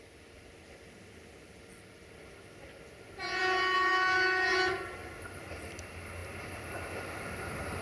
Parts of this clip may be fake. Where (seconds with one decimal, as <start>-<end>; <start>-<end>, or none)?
none